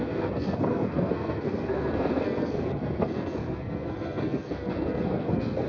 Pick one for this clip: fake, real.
fake